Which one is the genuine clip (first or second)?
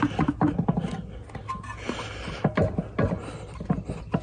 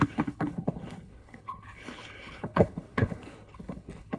first